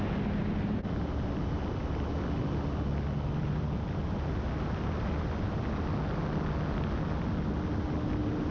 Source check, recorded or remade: recorded